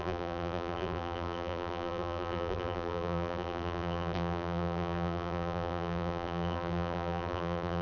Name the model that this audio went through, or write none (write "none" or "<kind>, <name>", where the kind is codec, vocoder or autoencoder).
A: vocoder, BigVGAN v2